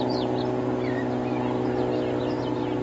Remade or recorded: recorded